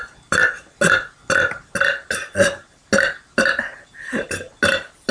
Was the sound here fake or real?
real